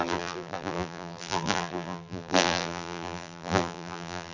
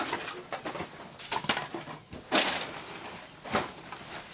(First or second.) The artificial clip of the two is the first